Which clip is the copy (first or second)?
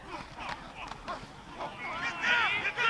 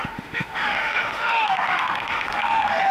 second